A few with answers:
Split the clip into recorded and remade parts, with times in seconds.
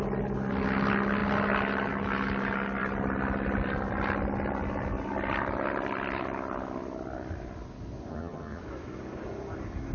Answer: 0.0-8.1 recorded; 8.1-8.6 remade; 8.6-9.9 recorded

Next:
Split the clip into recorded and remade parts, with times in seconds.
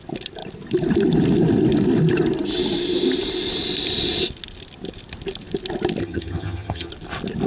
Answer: 0.0-6.0 recorded; 6.0-6.9 remade; 6.9-7.5 recorded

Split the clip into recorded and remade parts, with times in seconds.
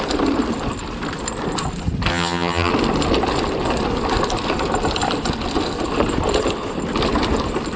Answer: 0.0-2.1 recorded; 2.1-2.7 remade; 2.7-7.8 recorded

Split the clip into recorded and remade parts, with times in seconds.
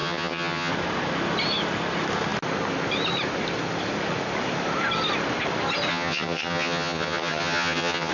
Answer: 0.0-0.7 remade; 0.7-5.9 recorded; 5.9-8.1 remade